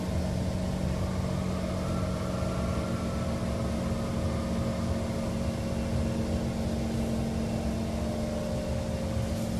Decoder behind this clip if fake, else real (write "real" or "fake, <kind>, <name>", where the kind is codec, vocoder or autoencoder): real